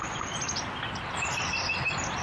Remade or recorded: recorded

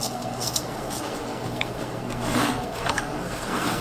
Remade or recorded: remade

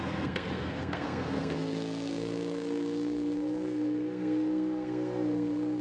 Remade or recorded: remade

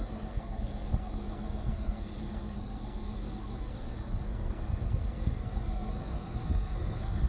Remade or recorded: remade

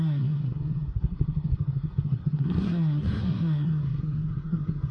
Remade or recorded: remade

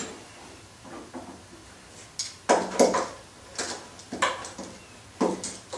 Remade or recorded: recorded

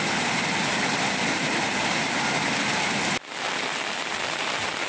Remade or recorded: recorded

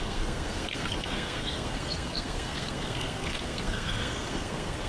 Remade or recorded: remade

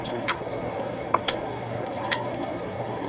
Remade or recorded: remade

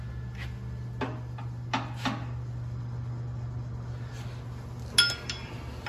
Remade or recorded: recorded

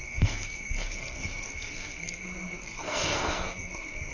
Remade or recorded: remade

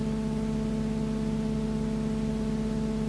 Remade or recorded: recorded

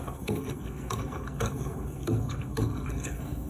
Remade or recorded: remade